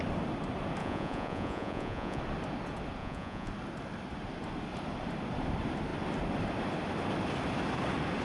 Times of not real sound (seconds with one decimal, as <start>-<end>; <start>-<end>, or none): 0.8-2.2; 3.0-3.5